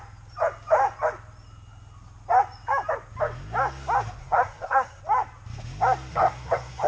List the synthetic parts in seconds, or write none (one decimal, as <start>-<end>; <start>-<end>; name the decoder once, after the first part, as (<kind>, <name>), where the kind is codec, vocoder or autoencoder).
4.2-5.0 (codec, SNAC); 6.1-6.9

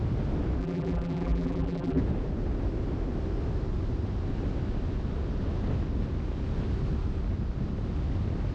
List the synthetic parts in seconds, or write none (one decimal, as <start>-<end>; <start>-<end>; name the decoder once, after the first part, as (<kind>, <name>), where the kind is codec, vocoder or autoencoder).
0.6-2.0 (vocoder, BigVGAN v2)

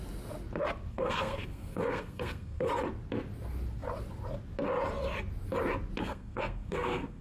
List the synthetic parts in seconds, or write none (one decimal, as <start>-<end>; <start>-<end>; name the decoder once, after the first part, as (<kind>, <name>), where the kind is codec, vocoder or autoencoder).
0.9-2.7 (codec, SNAC); 6.0-7.2